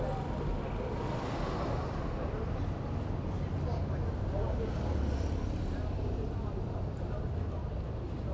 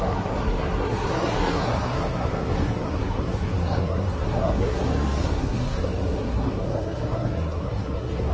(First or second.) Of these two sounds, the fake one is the second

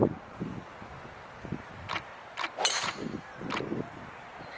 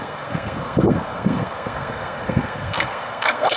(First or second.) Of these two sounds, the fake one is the second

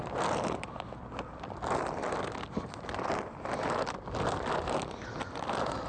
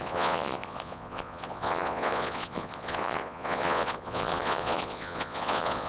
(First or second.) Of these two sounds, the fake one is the second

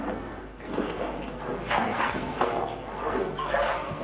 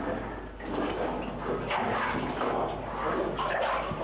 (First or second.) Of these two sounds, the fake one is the first